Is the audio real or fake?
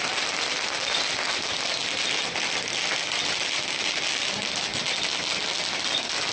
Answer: real